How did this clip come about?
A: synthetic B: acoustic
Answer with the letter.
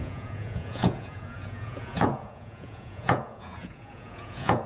A